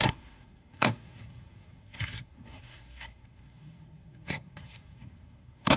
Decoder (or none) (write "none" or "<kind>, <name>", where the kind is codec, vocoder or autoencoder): codec, SNAC